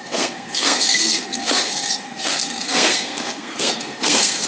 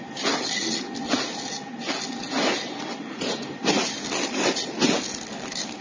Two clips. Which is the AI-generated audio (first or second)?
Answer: first